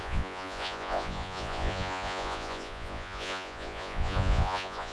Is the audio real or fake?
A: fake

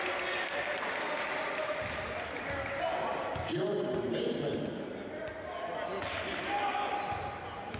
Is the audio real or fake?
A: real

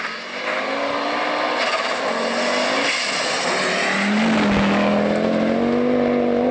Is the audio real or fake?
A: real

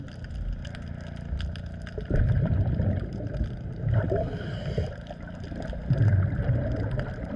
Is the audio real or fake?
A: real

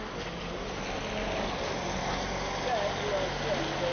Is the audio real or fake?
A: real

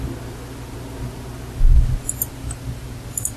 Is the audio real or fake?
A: real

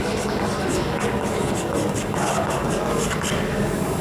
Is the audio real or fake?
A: fake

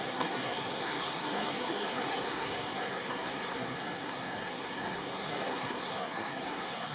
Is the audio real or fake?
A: fake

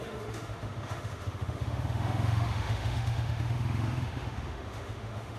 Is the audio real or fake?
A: fake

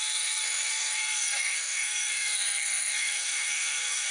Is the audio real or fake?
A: fake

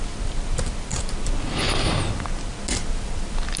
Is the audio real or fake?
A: real